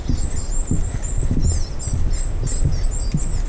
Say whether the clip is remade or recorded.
recorded